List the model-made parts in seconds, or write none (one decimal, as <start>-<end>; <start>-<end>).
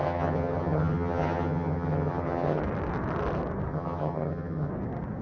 0.0-2.6; 3.7-4.7